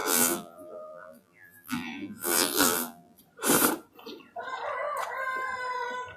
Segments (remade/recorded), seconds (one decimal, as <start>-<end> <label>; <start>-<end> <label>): 0.0-3.2 remade; 3.2-6.2 recorded